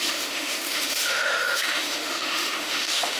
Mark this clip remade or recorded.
remade